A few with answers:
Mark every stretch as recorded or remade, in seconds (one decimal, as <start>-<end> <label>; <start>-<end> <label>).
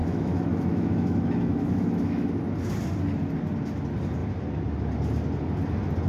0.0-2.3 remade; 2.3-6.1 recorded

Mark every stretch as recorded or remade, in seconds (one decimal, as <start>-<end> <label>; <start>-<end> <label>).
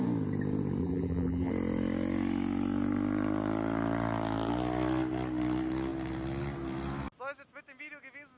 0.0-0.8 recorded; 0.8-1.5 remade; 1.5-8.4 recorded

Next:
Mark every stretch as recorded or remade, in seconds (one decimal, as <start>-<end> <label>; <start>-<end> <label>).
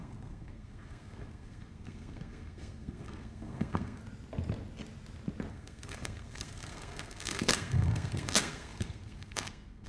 0.0-4.0 remade; 4.0-5.5 recorded; 5.5-9.9 remade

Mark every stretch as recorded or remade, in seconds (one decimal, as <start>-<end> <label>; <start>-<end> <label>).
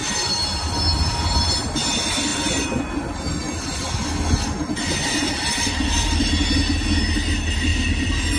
0.0-8.4 recorded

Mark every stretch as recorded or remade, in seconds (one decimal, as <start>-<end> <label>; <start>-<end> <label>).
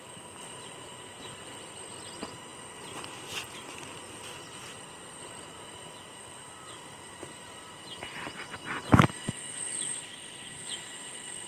0.0-11.5 recorded